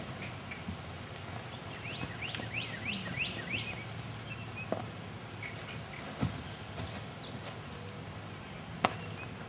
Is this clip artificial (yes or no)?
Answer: no